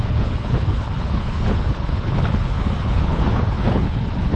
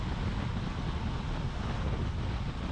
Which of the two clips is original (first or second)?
second